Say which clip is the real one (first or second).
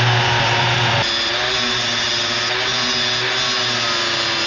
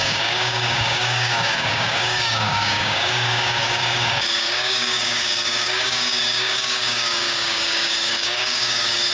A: first